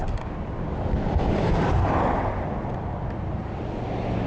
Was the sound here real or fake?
real